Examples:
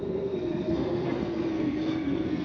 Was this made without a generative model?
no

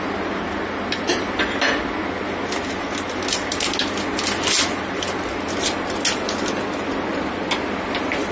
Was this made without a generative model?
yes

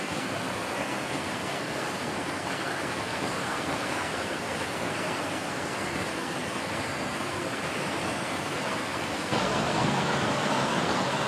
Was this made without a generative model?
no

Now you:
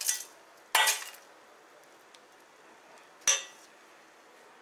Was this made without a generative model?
yes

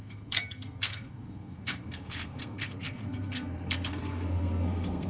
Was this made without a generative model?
no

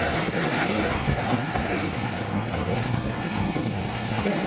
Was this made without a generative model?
no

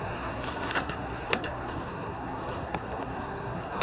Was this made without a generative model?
no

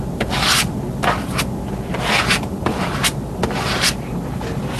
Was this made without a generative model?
yes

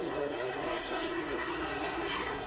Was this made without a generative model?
no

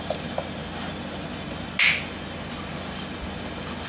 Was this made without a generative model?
yes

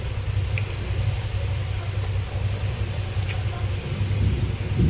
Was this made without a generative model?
yes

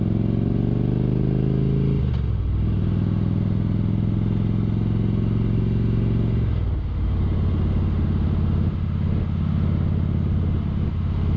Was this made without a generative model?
yes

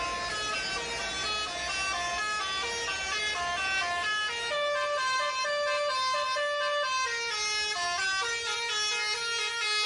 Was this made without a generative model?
yes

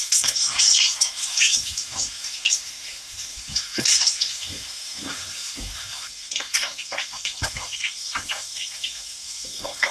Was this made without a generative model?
no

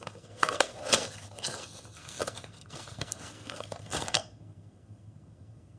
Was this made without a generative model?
no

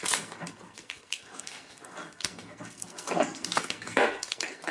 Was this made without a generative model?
no